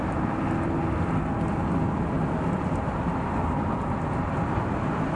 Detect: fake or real real